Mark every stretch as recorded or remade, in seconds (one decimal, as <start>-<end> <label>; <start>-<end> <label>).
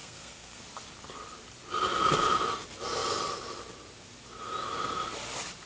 0.0-0.6 remade; 0.6-5.7 recorded